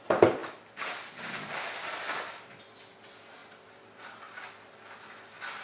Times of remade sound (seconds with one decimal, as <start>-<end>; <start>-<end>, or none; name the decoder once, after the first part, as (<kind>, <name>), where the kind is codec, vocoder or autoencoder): none